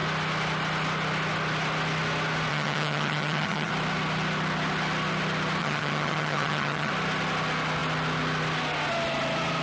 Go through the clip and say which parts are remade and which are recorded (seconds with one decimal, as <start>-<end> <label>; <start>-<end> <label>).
0.0-2.5 recorded; 2.5-3.7 remade; 3.7-5.6 recorded; 5.6-6.9 remade; 6.9-9.6 recorded